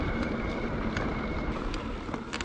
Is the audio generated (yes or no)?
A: no